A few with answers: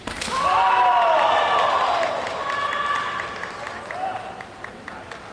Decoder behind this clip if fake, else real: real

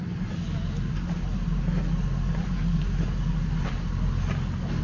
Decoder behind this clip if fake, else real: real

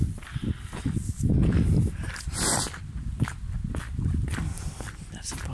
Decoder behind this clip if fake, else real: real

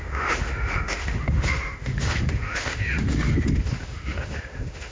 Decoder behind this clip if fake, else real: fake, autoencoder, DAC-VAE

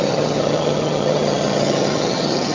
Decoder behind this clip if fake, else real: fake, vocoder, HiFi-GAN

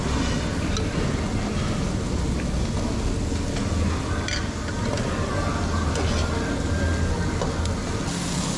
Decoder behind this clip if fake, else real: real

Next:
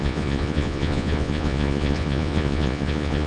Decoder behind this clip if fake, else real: fake, vocoder, Vocos